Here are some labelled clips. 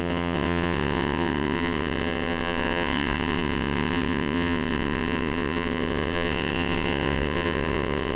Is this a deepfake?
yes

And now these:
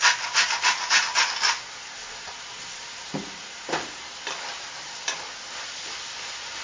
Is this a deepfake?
no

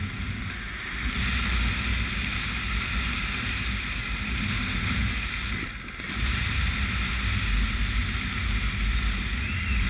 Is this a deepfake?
no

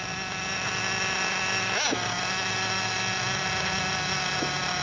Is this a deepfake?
no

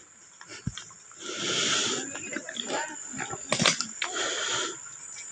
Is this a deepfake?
no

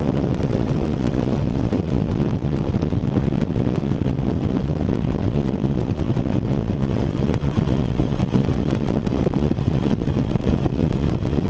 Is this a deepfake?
yes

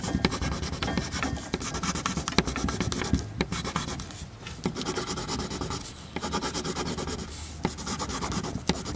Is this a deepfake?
no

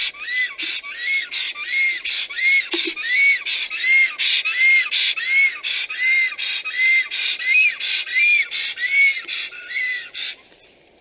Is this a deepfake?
no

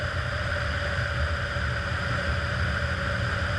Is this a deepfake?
no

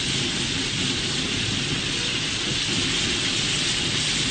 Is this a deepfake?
no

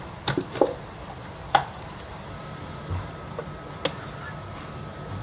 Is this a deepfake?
no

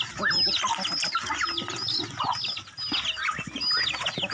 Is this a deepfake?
no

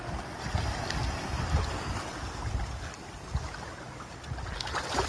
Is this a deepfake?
no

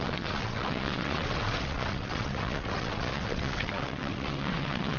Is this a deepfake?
yes